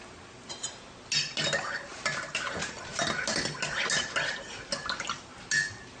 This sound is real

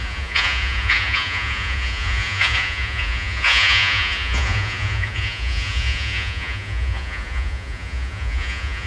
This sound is fake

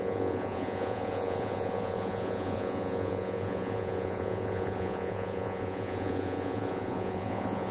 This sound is fake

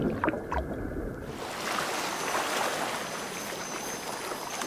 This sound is real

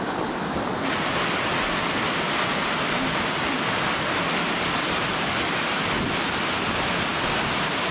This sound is real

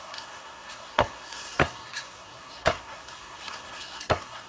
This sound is fake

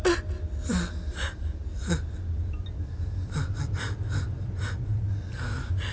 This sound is real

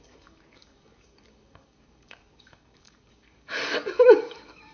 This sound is fake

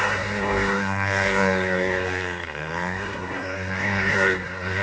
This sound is fake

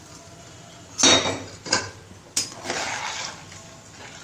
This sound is real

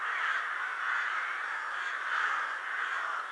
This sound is real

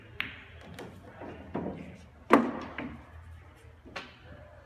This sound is real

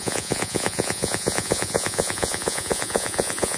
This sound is fake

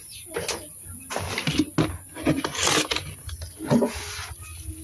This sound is real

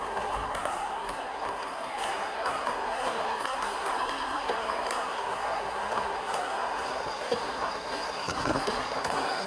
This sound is fake